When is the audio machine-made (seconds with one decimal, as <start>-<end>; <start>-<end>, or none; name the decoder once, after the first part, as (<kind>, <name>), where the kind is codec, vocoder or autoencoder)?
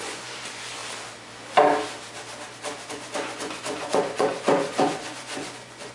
0.0-0.8 (vocoder, Vocos); 2.9-5.9